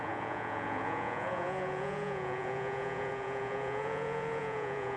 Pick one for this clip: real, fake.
fake